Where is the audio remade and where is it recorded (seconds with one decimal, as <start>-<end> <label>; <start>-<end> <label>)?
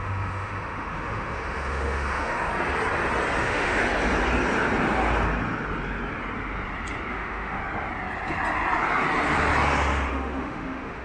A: 0.0-2.5 remade; 2.5-3.4 recorded; 3.4-3.8 remade; 3.8-7.1 recorded; 7.1-7.6 remade; 7.6-10.1 recorded; 10.1-11.0 remade